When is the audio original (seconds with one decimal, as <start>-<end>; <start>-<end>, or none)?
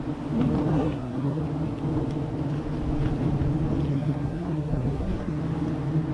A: 0.0-0.7; 1.4-3.9; 5.4-6.1